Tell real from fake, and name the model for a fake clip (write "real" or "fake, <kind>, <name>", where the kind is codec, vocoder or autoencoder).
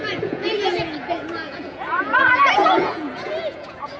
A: fake, vocoder, Vocos